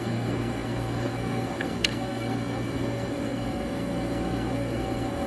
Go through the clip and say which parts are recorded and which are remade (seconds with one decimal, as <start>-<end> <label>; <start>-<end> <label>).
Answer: 0.0-5.3 remade